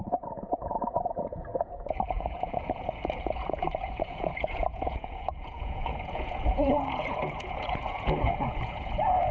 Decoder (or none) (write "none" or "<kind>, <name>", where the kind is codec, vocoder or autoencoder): vocoder, Vocos